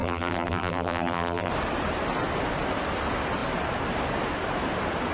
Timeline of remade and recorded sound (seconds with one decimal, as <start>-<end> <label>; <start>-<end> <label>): 0.0-1.5 remade; 1.5-5.1 recorded